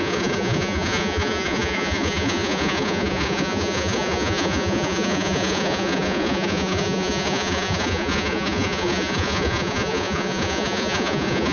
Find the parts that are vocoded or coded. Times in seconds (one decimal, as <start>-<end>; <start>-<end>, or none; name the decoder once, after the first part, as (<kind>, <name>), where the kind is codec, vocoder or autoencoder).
0.0-11.5 (vocoder, Vocos)